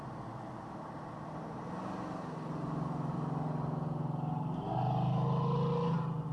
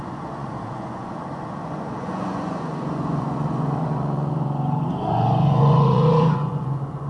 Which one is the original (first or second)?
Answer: first